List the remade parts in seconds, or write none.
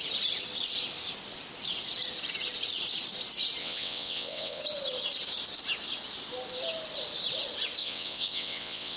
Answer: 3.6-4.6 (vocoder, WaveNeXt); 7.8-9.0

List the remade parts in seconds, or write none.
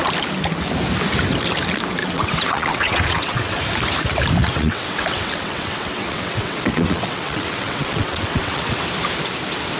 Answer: 2.0-3.6 (vocoder, WaveNeXt); 4.4-8.8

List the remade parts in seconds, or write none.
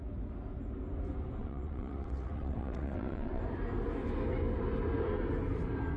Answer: 1.4-3.4 (vocoder, WaveNeXt)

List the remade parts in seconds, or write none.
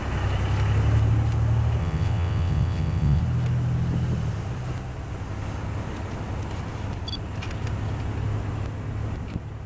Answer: 1.8-3.2 (vocoder, WaveNeXt)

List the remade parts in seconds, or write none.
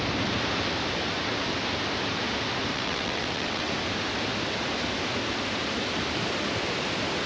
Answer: 2.7-3.7 (vocoder, WaveNeXt)